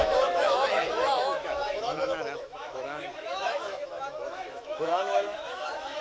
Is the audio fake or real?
fake